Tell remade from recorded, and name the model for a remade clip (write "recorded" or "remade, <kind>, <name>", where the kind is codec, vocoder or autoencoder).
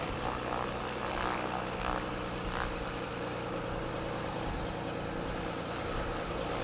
recorded